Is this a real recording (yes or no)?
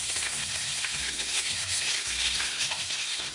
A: no